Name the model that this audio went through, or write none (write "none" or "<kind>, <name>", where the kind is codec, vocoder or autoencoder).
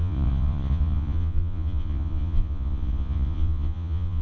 vocoder, Vocos